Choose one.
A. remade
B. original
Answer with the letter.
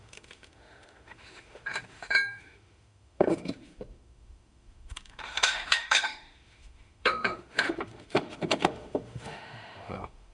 A